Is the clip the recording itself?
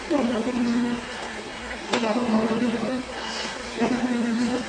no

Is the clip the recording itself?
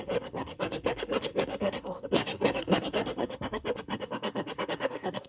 no